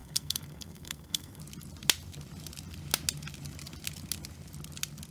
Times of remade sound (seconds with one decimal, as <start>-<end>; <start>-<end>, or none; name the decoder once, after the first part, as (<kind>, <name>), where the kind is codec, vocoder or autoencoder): 0.0-1.4 (codec, SNAC)